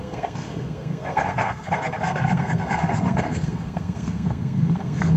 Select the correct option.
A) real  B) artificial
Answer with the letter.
B